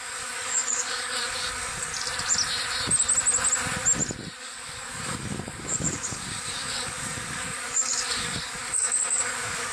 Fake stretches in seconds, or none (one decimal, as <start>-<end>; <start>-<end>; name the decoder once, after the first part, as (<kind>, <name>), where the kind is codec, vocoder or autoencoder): 0.0-1.9 (codec, DAC); 4.4-9.7